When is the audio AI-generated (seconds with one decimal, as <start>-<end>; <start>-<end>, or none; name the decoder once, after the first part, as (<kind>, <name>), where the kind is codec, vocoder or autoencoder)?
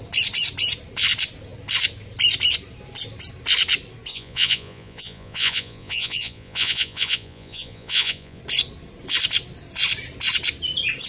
4.1-8.4 (vocoder, Vocos)